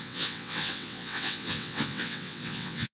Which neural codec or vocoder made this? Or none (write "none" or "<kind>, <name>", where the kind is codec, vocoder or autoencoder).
vocoder, WaveNeXt